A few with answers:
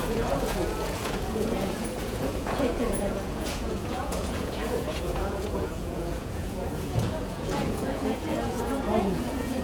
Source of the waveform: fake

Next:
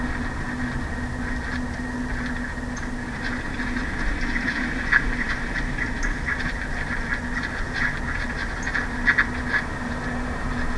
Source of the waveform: real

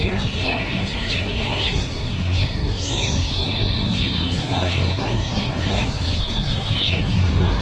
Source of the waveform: fake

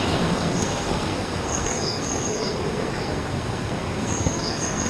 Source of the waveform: fake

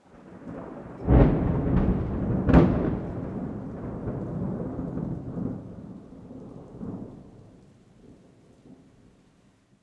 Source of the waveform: real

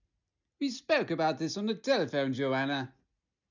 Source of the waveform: real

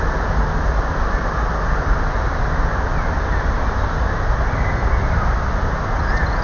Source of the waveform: real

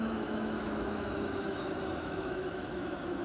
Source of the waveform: fake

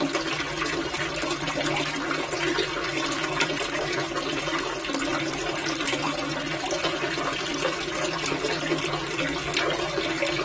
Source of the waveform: real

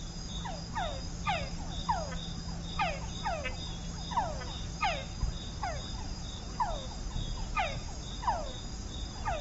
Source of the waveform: real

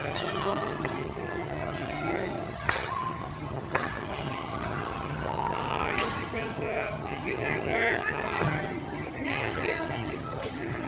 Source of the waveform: fake